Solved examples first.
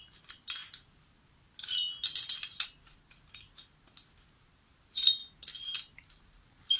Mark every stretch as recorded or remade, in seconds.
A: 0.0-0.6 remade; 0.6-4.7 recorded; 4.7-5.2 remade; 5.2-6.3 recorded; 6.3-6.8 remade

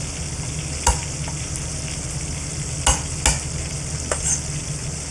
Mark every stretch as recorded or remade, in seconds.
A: 0.0-5.1 recorded